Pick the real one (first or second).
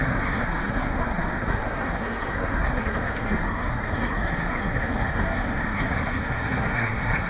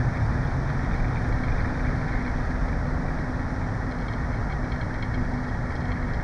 second